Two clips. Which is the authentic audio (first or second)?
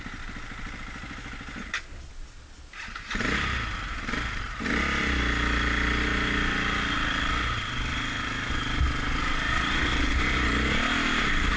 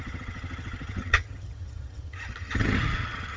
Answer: first